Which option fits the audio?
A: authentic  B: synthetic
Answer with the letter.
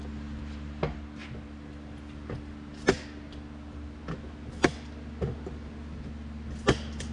A